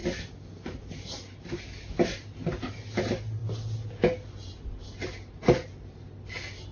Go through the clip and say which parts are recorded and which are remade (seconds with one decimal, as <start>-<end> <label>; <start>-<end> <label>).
0.0-6.7 recorded